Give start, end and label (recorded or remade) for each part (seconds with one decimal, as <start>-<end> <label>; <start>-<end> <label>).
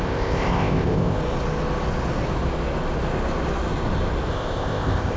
0.0-1.2 remade; 1.2-4.3 recorded; 4.3-5.2 remade